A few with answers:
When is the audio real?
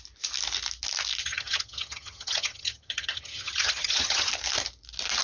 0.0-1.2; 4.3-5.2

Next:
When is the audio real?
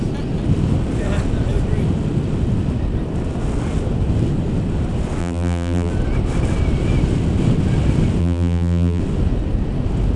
0.0-5.2; 5.9-8.2; 9.0-10.2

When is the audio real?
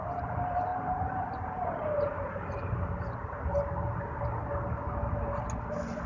0.0-6.1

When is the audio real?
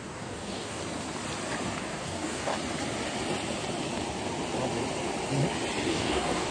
0.8-1.8; 2.5-5.9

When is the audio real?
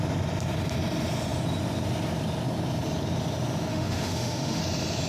0.0-3.7; 4.6-5.1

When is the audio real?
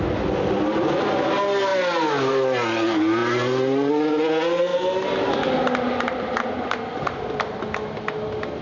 0.0-8.6